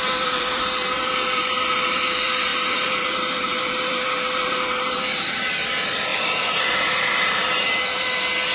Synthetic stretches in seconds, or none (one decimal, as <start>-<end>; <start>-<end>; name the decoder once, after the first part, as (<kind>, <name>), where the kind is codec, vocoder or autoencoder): 0.0-8.5 (vocoder, BigVGAN v2)